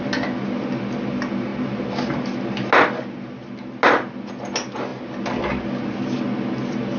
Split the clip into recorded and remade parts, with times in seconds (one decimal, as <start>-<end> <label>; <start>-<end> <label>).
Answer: 0.0-7.0 recorded